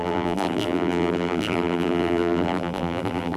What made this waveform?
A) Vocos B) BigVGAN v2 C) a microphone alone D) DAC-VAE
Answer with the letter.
B